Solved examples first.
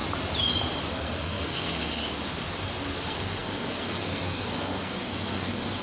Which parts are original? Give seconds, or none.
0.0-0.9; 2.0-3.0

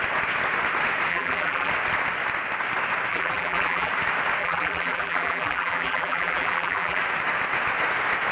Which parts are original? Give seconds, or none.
0.0-1.1; 1.7-3.1; 3.9-4.4; 7.0-8.3